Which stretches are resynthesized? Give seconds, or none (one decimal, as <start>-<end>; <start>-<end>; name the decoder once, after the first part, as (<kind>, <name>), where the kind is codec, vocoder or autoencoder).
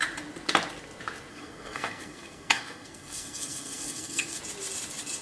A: 1.3-4.4 (codec, SNAC)